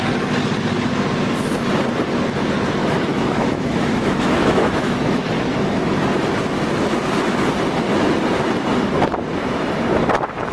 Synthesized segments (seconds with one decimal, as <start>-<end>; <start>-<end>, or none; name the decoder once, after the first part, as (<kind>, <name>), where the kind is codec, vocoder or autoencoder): 3.1-5.3 (autoencoder, DAC-VAE)